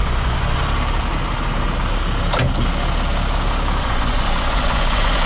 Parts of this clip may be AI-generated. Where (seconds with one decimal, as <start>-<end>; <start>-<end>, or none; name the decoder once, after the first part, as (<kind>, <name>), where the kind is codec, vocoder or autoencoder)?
0.0-0.6 (vocoder, Vocos); 3.8-5.3